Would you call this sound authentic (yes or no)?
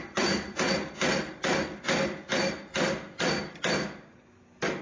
yes